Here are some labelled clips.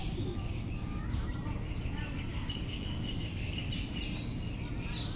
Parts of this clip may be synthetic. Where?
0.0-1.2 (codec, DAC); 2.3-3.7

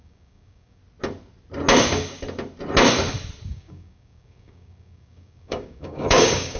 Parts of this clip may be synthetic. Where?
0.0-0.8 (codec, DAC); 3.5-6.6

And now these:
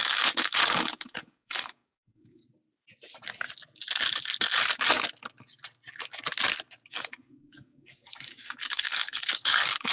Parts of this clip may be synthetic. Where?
0.0-2.4 (codec, DAC); 6.9-9.9